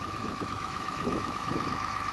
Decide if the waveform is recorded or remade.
remade